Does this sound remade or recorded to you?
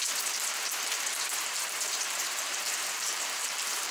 remade